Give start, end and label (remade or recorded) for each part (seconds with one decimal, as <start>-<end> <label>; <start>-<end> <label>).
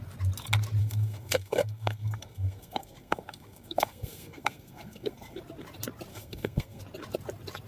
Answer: 0.0-0.8 recorded; 0.8-5.4 remade; 5.4-6.1 recorded; 6.1-6.8 remade; 6.8-7.7 recorded